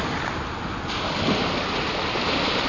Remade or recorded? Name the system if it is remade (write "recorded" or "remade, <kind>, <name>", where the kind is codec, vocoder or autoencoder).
recorded